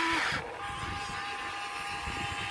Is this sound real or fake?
real